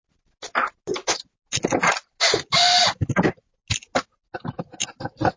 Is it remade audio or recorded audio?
recorded